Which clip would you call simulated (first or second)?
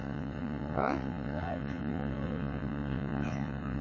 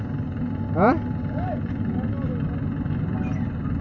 first